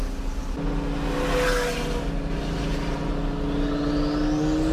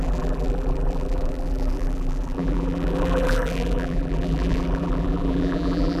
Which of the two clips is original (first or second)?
first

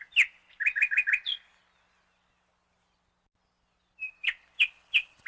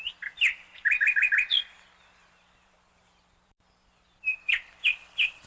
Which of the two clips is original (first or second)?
first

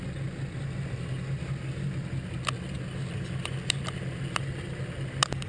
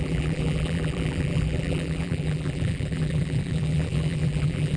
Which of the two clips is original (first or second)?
first